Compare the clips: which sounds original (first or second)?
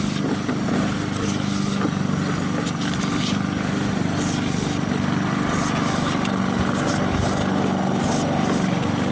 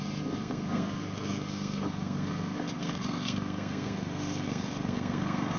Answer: first